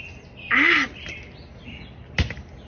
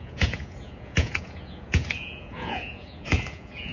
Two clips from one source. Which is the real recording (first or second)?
first